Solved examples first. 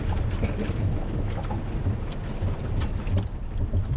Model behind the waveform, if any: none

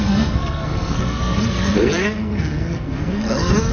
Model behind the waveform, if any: codec, SNAC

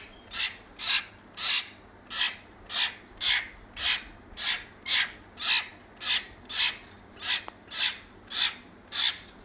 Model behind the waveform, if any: none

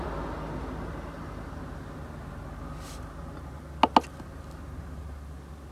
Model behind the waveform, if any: none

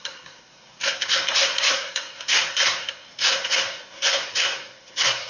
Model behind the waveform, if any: codec, SNAC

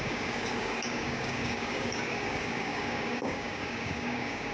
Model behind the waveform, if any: codec, DAC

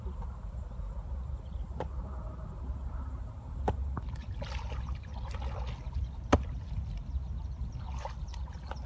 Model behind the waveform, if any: none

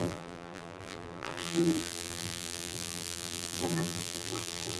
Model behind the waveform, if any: vocoder, BigVGAN v2